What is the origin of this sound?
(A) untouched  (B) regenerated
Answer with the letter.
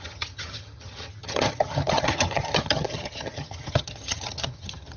B